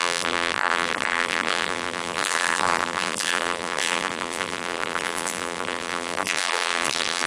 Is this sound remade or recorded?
remade